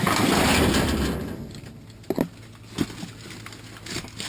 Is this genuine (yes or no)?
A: yes